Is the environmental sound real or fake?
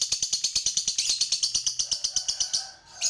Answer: real